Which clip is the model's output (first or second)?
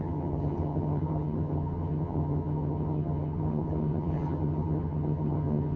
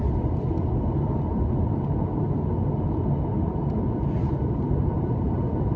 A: first